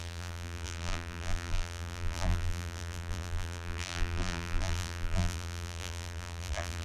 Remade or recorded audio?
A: remade